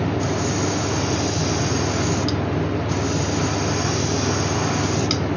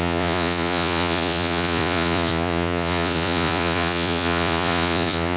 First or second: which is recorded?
first